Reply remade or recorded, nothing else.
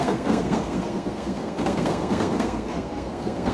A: remade